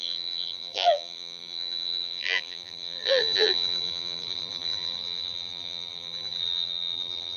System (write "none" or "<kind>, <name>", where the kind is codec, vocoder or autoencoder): vocoder, BigVGAN v2